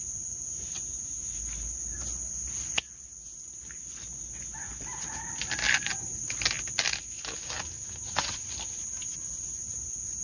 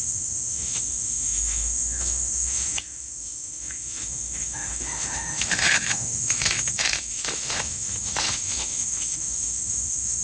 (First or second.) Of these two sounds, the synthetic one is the second